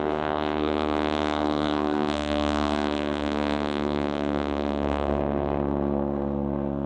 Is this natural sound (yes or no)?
no